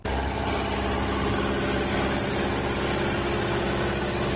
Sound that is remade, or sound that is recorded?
recorded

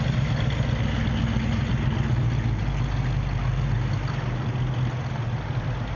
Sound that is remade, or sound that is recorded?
recorded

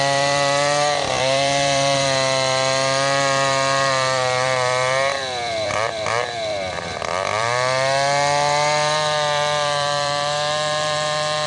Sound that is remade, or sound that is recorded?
remade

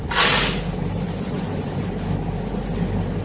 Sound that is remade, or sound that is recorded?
recorded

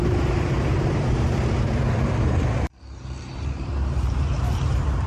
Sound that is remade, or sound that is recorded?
remade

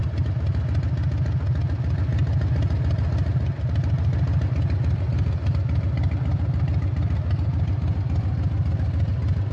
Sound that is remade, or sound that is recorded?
recorded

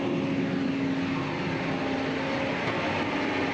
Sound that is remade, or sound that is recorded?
recorded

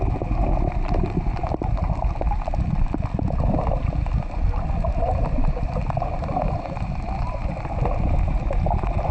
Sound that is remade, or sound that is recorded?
recorded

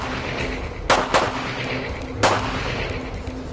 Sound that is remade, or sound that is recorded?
recorded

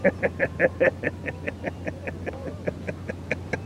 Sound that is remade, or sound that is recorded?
remade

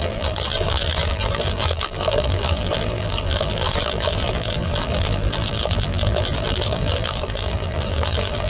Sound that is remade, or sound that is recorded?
remade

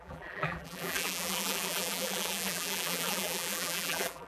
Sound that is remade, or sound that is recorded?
remade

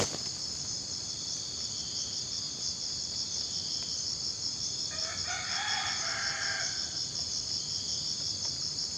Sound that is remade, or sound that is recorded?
remade